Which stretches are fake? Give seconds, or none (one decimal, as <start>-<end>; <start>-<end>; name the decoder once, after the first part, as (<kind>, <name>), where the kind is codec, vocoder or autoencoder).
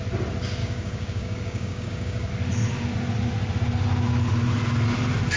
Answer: 0.6-2.3 (codec, DAC)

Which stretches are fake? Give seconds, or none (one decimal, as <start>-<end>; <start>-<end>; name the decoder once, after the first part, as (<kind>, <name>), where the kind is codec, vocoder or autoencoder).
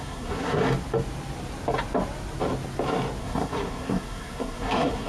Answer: 0.0-0.6 (codec, SNAC); 3.2-5.1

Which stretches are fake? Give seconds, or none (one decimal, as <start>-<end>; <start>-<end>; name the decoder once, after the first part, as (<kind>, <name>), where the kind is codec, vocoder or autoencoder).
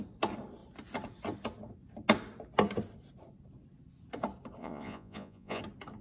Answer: 4.6-5.6 (vocoder, Vocos)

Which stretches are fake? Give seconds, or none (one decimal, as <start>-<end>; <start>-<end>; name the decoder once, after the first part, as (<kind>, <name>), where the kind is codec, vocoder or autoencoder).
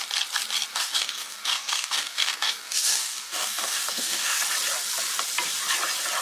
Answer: 0.7-4.4 (codec, DAC)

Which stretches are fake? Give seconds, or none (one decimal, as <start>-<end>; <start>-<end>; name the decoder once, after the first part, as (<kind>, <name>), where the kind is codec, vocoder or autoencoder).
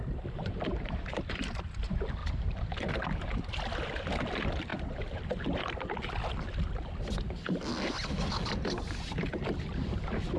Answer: 0.4-1.2 (vocoder, BigVGAN v2); 2.2-2.9; 4.7-5.6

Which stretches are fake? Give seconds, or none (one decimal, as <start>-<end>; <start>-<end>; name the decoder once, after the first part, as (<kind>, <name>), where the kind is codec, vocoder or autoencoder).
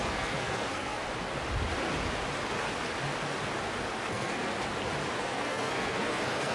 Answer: 0.0-1.0 (codec, SNAC); 4.1-4.5; 5.2-6.5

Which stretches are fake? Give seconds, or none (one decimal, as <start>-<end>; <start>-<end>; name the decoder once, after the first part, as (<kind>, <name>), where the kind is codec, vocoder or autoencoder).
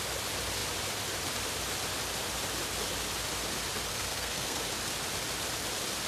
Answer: 3.9-4.6 (codec, SNAC)